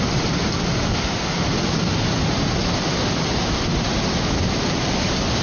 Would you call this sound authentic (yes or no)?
yes